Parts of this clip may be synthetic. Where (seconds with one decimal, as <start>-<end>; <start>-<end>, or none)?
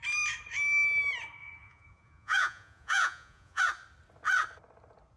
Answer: 1.4-3.6